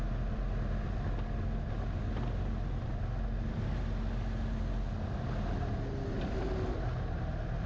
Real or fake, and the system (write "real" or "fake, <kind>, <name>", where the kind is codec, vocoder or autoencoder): real